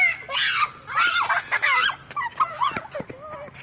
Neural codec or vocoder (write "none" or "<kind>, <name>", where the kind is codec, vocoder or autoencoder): none